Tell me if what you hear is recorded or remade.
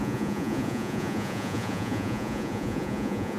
remade